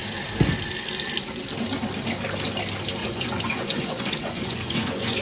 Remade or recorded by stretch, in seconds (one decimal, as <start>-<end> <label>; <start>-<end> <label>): 0.0-3.0 recorded; 3.0-5.2 remade